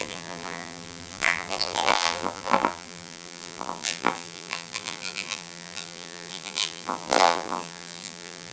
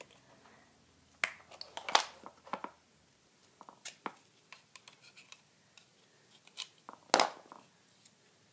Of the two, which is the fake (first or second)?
first